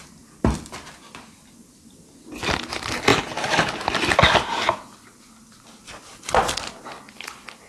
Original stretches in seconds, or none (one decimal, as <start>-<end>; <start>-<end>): 0.0-7.7